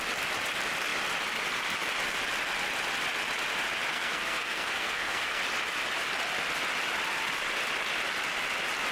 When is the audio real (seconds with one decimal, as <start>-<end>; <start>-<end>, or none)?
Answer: 0.0-3.9; 5.4-8.9